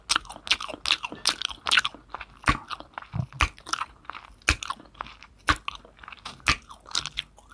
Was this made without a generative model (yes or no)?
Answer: yes